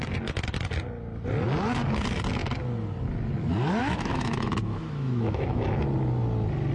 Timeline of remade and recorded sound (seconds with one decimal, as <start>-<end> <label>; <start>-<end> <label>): 0.0-3.8 recorded; 3.8-5.8 remade; 5.8-6.7 recorded